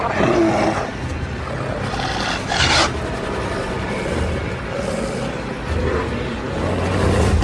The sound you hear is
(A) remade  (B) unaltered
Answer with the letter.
B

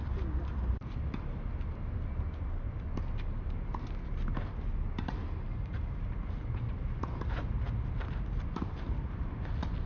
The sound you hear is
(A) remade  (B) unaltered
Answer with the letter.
B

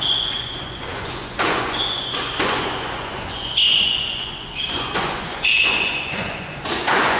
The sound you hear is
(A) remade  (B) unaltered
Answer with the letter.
A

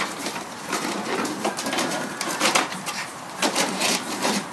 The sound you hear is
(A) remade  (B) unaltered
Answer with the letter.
A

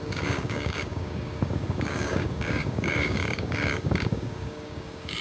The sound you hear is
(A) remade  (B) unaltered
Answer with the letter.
A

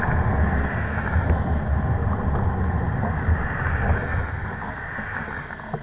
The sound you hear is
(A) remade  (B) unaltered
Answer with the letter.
B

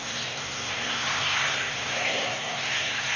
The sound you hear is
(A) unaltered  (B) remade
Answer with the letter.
B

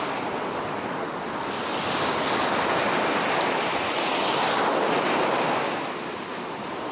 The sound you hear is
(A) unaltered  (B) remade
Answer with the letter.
A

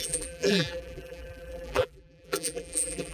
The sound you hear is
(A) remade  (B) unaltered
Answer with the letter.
A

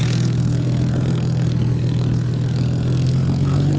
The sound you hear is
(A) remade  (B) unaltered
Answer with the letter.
A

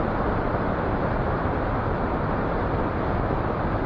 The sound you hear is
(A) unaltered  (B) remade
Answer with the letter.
A